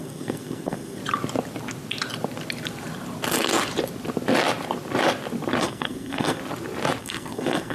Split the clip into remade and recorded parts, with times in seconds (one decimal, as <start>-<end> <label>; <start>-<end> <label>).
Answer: 0.0-1.0 remade; 1.0-5.6 recorded; 5.6-6.4 remade; 6.4-7.0 recorded; 7.0-7.7 remade